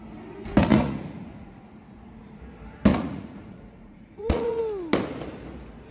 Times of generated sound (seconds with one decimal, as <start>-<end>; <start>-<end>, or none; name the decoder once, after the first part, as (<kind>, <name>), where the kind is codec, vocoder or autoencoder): 0.7-2.4 (vocoder, Vocos); 2.9-4.6